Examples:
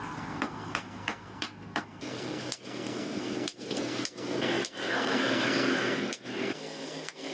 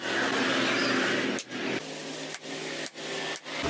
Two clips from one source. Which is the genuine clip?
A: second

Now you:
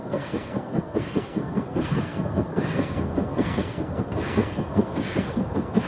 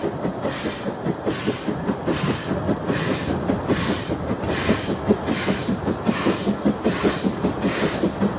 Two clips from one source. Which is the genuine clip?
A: second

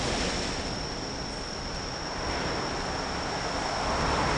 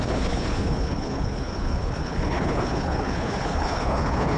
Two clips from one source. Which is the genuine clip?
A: first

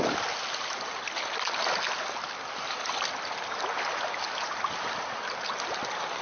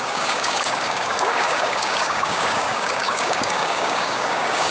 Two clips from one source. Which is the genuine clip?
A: first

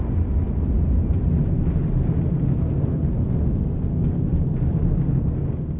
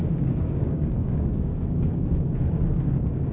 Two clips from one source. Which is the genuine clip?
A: first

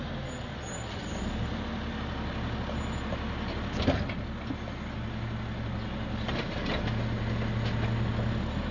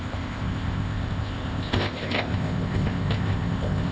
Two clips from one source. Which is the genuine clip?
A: first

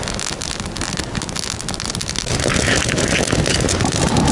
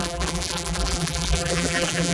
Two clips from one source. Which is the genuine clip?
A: first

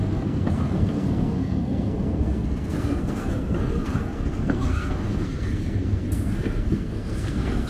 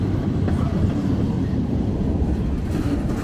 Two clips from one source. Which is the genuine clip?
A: second